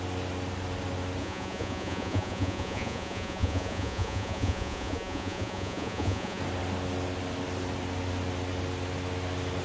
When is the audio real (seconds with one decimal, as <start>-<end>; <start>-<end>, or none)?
0.0-1.2; 6.4-9.6